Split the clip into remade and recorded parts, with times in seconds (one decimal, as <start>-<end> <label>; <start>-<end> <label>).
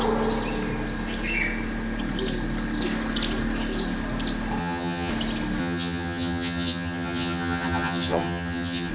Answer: 0.0-4.6 recorded; 4.6-5.1 remade; 5.1-5.6 recorded; 5.6-8.9 remade